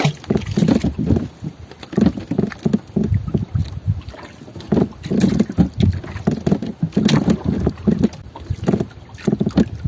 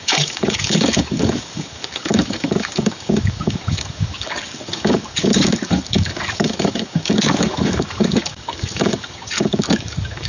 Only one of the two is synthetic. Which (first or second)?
second